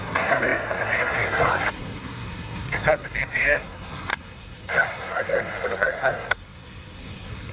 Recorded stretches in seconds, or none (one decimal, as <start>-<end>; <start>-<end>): none